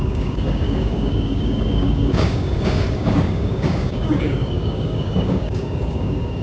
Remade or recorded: remade